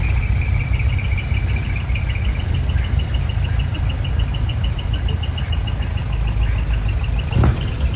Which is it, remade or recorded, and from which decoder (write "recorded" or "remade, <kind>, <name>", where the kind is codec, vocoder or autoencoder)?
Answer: recorded